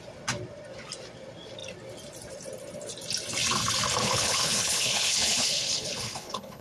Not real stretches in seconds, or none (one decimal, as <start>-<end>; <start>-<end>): 4.0-6.6